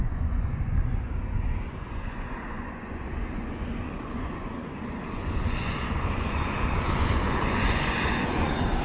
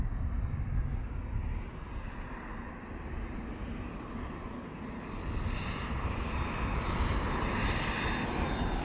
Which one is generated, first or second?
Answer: first